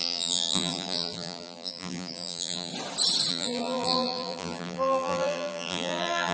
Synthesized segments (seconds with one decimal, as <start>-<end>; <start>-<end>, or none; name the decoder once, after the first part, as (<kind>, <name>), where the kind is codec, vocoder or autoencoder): 0.0-2.7 (vocoder, BigVGAN v2); 3.3-6.3